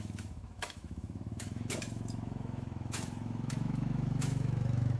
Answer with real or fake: fake